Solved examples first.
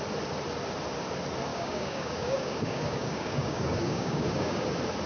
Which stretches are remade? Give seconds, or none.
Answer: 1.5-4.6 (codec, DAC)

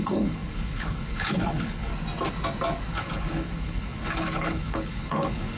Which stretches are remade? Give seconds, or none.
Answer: 0.0-1.9 (codec, HILCodec); 2.9-5.6

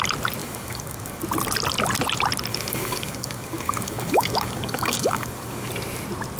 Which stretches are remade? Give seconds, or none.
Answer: 0.4-1.2 (codec, DAC); 2.5-5.7

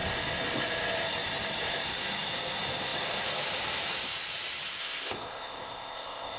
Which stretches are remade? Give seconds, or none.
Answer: 4.8-6.4 (codec, ZipCodec)

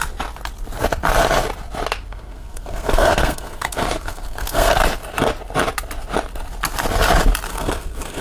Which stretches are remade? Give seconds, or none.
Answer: 2.1-4.8 (codec, SNAC); 7.5-8.2

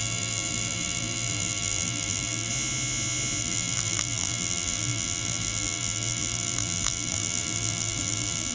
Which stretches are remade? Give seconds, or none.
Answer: 0.0-2.5 (vocoder, BigVGAN v2); 3.4-8.5

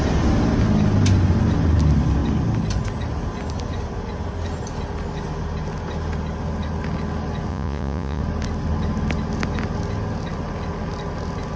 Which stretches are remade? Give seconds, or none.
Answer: 7.5-8.2 (vocoder, Vocos)

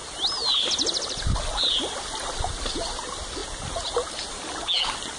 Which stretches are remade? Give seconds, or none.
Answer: none